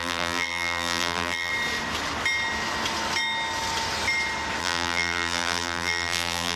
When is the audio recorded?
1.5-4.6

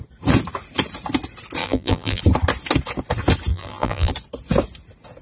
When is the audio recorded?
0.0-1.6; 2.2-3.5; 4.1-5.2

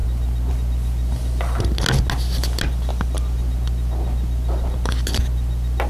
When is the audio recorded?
0.0-5.9

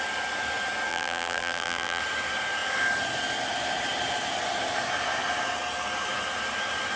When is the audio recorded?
0.0-0.9; 2.0-7.0

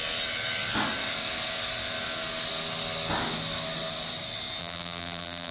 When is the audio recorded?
0.0-4.6

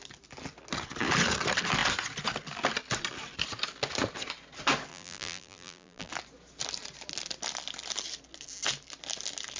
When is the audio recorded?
0.0-4.9; 6.1-9.6

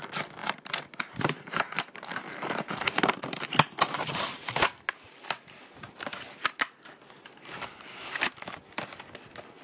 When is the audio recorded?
0.0-0.4; 4.5-9.6

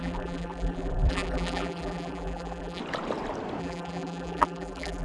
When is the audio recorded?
2.8-3.6